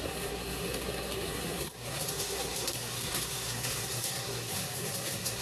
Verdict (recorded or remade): remade